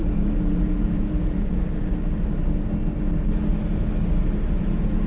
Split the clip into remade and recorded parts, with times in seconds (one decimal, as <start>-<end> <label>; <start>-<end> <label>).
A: 0.0-1.9 remade; 1.9-5.1 recorded